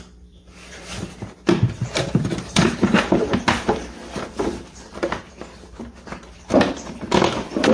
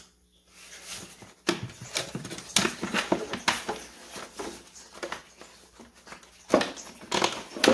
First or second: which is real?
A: second